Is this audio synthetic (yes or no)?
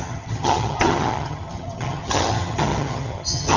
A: yes